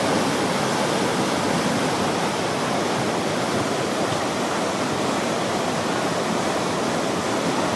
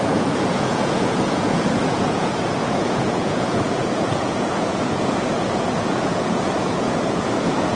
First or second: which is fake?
second